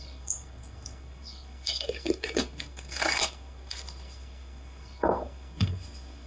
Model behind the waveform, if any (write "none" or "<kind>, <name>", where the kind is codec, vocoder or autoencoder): codec, SNAC